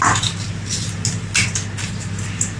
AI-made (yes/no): no